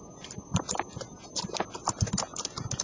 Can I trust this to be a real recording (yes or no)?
yes